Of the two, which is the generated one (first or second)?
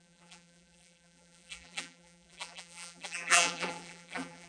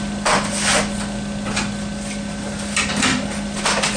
first